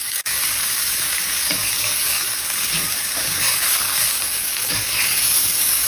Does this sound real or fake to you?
fake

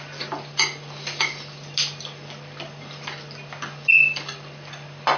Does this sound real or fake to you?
real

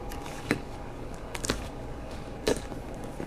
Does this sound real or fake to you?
fake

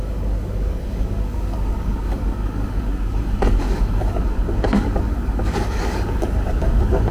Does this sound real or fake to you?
fake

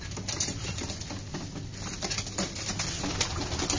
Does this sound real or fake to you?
real